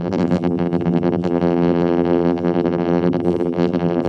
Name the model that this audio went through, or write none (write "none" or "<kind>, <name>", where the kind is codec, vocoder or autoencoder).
vocoder, BigVGAN v2